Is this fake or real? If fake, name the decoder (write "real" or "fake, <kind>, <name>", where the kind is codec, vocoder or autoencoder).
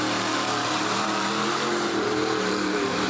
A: fake, vocoder, BigVGAN v2